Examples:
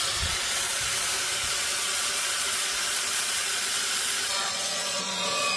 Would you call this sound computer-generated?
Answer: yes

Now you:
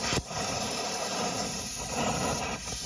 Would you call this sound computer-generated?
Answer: yes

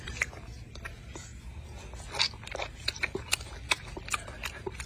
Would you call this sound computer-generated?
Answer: no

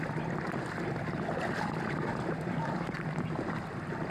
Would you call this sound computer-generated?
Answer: no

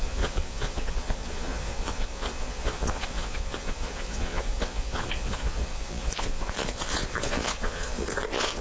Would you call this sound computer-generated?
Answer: yes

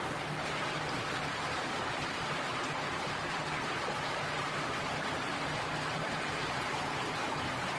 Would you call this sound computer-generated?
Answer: no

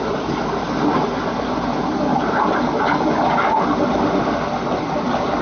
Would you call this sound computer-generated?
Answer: no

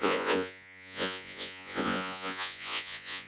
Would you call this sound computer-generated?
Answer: yes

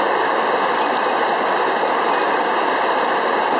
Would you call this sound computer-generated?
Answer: no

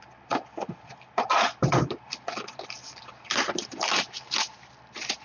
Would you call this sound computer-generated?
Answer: yes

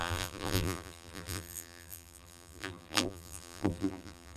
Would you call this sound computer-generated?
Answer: yes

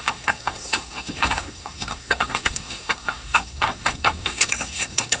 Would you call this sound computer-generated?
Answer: yes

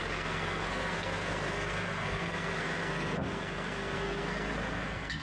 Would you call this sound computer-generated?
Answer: yes